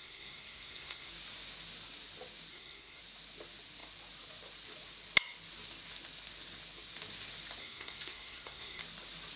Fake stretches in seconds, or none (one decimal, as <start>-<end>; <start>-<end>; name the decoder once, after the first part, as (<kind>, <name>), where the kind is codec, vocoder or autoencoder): 0.0-1.1 (codec, SNAC); 2.5-3.0; 7.6-8.8